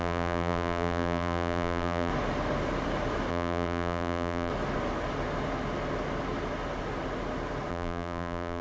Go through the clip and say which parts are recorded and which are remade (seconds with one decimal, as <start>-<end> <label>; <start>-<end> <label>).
0.0-2.1 remade; 2.1-3.3 recorded; 3.3-4.5 remade; 4.5-7.7 recorded; 7.7-8.6 remade